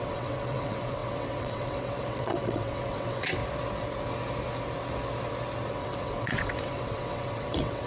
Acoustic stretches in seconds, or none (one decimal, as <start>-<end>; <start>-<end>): 3.4-5.7